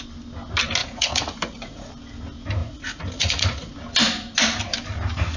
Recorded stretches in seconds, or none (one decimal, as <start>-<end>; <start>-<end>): 0.0-0.8; 1.9-2.6; 3.7-5.4